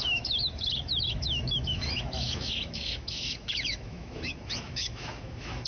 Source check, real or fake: fake